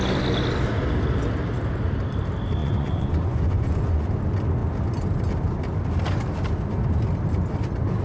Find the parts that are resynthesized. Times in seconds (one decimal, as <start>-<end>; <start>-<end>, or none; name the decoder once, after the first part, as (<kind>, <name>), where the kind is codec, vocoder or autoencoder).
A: 2.6-4.1 (vocoder, Vocos)